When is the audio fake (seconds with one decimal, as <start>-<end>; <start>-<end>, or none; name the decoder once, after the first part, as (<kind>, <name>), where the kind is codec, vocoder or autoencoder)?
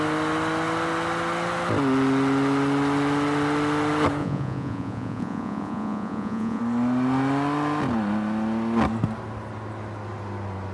4.2-6.6 (vocoder, Vocos)